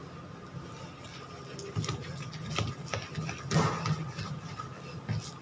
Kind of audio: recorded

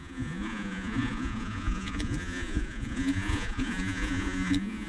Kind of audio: remade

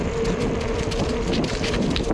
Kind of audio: remade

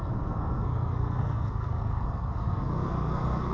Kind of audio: remade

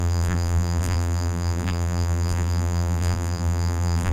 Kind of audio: remade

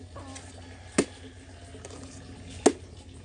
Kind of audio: recorded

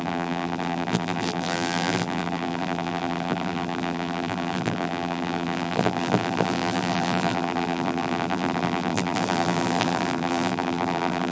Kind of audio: remade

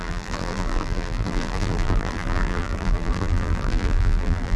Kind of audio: remade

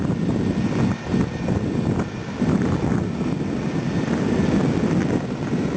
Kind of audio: recorded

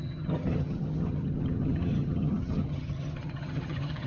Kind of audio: remade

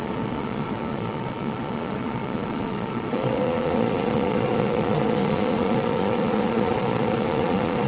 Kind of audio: remade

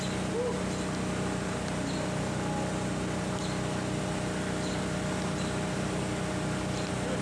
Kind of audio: recorded